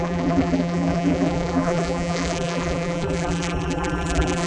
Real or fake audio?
fake